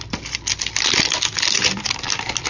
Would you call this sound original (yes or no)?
yes